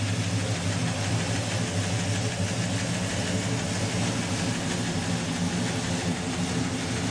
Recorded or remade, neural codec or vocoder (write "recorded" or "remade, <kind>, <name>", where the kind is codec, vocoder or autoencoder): recorded